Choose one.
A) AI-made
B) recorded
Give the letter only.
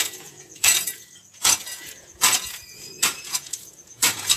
A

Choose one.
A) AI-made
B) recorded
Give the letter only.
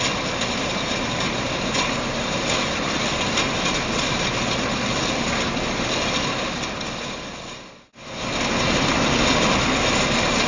B